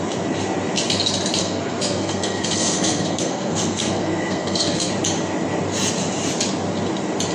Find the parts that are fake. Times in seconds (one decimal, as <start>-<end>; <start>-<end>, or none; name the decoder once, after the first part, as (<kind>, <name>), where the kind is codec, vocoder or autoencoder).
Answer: 1.4-4.9 (codec, SNAC)